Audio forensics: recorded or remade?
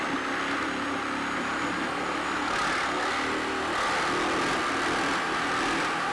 recorded